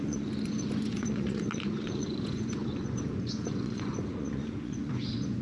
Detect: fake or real fake